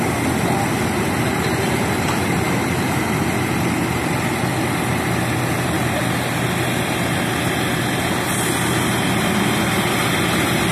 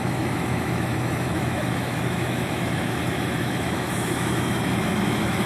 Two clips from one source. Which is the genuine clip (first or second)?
first